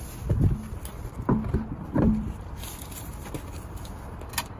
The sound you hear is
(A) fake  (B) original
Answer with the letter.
B